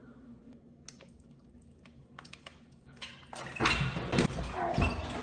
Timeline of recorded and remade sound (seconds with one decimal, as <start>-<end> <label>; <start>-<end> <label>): 0.0-3.1 remade; 3.1-5.2 recorded